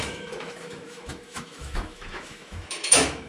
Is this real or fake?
fake